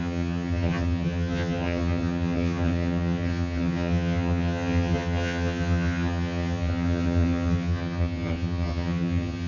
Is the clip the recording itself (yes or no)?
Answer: no